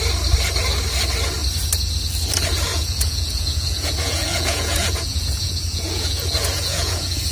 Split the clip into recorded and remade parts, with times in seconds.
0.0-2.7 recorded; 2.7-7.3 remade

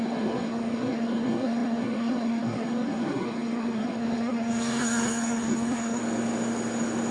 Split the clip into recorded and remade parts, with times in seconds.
0.0-6.0 remade; 6.0-7.1 recorded

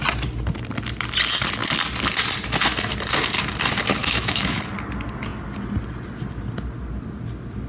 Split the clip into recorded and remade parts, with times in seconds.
0.0-4.0 recorded; 4.0-4.6 remade; 4.6-7.7 recorded

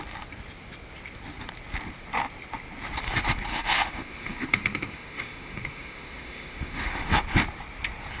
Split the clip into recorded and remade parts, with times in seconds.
0.0-3.5 recorded; 3.5-7.2 remade; 7.2-8.2 recorded

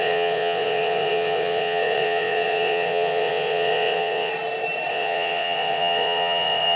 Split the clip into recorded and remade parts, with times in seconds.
0.0-4.3 remade; 4.3-4.9 recorded; 4.9-6.8 remade

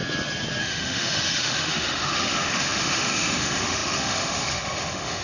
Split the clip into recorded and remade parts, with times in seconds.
0.0-0.6 recorded; 0.6-5.2 remade

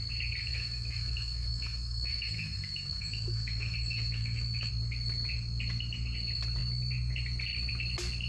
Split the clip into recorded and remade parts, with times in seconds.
0.0-0.4 recorded; 0.4-4.7 remade; 4.7-8.3 recorded